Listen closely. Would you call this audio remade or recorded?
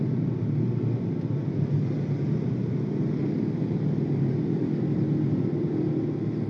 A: recorded